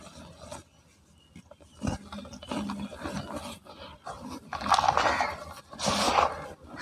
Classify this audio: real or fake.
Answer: real